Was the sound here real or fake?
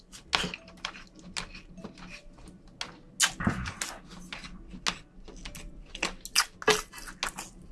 real